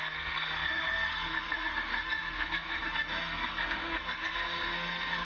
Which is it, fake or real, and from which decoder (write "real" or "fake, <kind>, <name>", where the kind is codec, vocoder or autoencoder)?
fake, codec, SNAC